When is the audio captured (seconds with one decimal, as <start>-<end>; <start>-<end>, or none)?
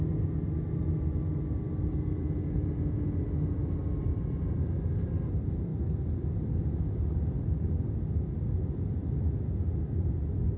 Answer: 0.0-10.6